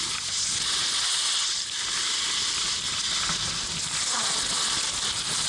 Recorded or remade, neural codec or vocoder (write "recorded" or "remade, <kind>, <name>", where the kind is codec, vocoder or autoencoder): recorded